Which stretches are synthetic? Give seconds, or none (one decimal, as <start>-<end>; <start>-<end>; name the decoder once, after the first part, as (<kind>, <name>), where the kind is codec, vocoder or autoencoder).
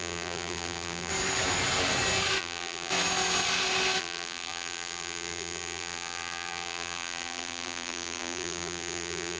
0.0-1.1 (vocoder, BigVGAN v2); 2.4-2.9; 4.0-9.4